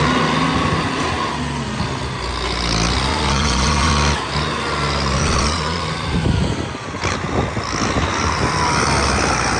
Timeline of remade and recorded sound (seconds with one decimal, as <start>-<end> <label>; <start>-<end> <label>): 0.0-3.1 recorded; 3.1-3.9 remade; 3.9-5.2 recorded; 5.2-5.8 remade; 5.8-9.6 recorded